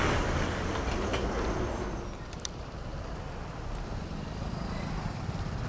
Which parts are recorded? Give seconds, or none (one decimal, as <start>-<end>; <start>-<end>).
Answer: 1.1-2.4; 2.9-4.0